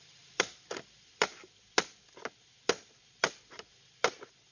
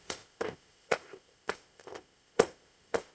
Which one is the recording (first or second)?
first